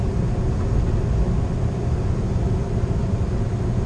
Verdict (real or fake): real